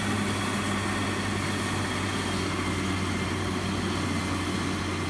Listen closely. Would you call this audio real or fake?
real